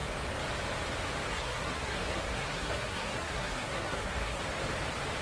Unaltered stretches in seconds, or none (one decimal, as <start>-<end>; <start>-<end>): 0.0-1.3; 4.4-5.2